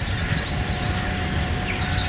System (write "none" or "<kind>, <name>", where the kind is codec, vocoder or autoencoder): none